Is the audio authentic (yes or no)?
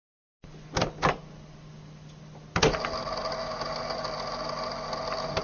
yes